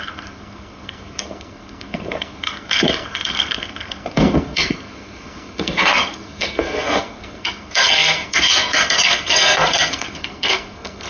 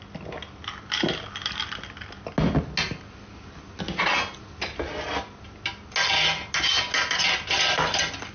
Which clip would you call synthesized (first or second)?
first